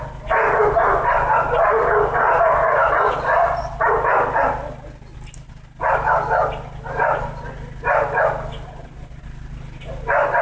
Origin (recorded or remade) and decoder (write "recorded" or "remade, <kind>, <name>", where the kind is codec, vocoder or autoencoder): recorded